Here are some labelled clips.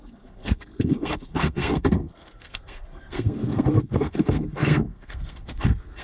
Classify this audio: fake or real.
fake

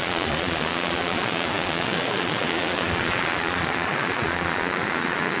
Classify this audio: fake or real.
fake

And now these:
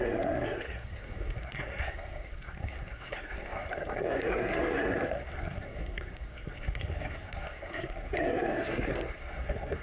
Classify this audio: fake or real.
fake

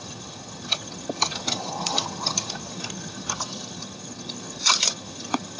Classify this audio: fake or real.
fake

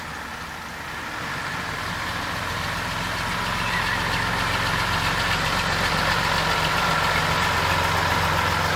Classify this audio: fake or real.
real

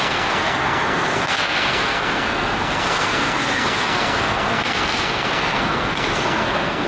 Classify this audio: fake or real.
fake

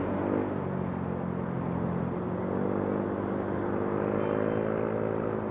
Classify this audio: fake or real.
real